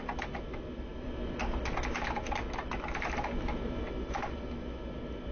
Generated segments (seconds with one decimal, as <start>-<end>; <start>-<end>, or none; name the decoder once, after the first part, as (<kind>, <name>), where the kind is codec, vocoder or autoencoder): none